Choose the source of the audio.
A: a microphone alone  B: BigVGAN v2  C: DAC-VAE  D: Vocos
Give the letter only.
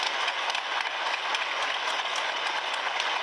D